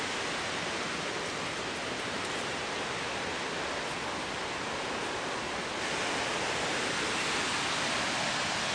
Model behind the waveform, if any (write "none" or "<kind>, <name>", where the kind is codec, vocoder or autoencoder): none